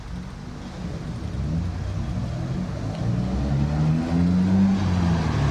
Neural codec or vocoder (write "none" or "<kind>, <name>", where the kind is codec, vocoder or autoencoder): none